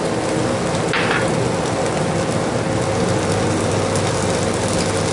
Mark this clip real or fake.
real